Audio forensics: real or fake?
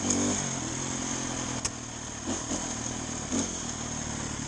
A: real